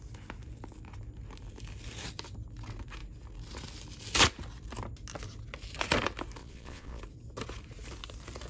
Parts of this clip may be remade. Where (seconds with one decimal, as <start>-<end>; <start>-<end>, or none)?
6.4-7.0